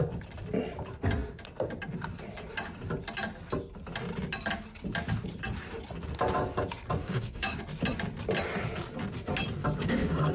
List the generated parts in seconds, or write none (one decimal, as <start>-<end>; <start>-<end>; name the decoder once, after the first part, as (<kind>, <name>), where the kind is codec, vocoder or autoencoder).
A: 7.0-7.6 (codec, DAC); 9.6-10.3